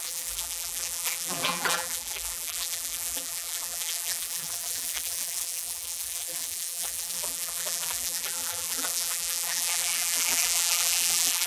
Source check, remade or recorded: remade